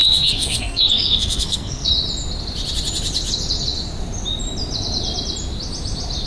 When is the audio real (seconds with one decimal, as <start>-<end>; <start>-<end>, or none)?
1.9-6.3